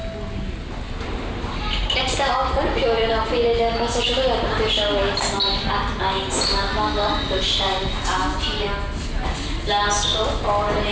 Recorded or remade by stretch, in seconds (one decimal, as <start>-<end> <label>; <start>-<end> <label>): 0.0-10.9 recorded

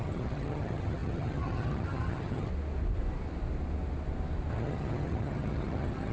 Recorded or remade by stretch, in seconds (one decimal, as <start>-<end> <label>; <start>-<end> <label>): 0.0-2.5 remade; 2.5-4.5 recorded; 4.5-6.1 remade

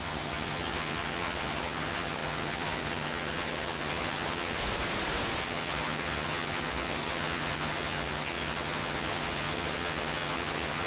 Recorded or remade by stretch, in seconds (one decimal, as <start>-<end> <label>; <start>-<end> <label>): 0.0-4.6 remade; 4.6-5.4 recorded; 5.4-10.9 remade